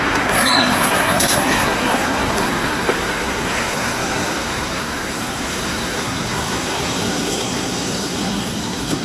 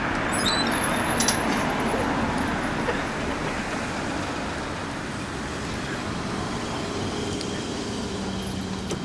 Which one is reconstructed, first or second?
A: first